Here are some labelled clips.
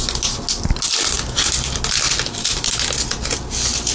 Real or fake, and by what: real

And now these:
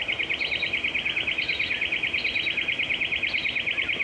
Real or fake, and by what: real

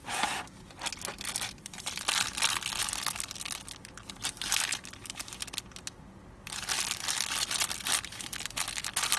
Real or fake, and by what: real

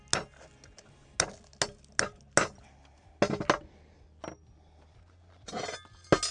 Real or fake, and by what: real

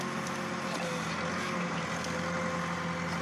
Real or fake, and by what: real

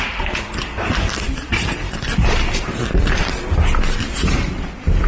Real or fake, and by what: real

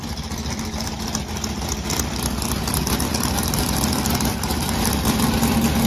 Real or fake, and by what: real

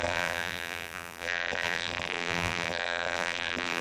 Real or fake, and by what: fake, vocoder, BigVGAN v2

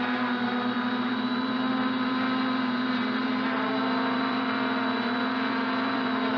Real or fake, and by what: fake, vocoder, BigVGAN v2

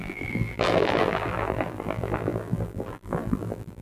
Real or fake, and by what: fake, vocoder, BigVGAN v2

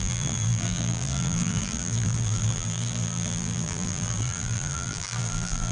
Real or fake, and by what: fake, vocoder, BigVGAN v2